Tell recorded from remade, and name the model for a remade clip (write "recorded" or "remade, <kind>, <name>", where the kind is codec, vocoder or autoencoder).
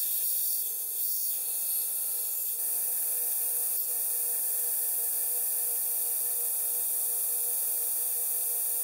recorded